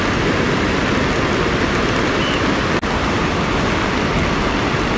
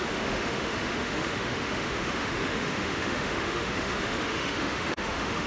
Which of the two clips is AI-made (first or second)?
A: second